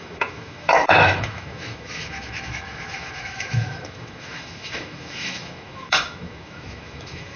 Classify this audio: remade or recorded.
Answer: remade